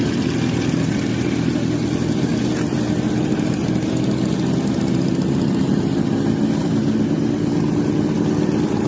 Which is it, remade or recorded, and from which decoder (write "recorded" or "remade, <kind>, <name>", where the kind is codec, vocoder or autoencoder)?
recorded